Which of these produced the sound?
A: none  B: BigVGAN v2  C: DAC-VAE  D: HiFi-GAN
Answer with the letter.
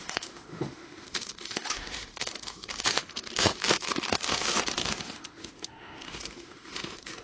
C